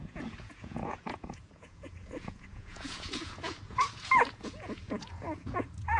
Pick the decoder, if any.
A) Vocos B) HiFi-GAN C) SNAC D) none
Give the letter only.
A